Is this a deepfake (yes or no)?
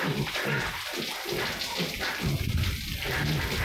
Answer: no